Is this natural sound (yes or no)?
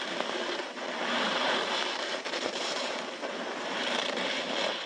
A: no